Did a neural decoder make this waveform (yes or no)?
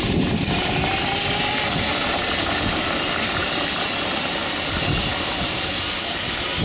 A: no